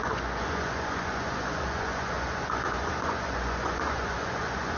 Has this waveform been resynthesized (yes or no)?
yes